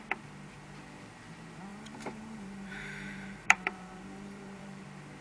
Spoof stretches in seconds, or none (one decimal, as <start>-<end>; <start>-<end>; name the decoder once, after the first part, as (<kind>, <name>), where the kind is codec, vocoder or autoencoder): 1.7-4.8 (vocoder, BigVGAN v2)